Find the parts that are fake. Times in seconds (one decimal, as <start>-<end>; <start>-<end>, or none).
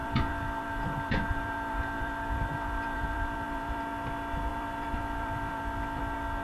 0.0-3.8; 4.5-6.0